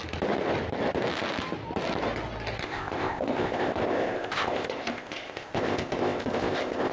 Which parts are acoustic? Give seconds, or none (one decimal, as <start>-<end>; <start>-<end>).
0.0-2.6